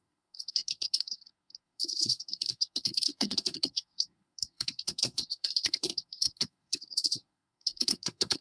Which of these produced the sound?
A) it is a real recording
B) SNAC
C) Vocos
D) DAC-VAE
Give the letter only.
B